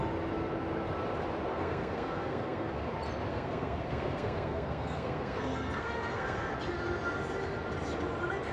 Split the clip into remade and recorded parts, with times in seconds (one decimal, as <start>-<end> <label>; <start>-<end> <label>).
0.0-1.5 recorded; 1.5-2.9 remade; 2.9-3.3 recorded; 3.3-6.5 remade; 6.5-8.5 recorded